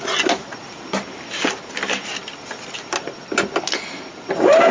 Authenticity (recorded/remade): recorded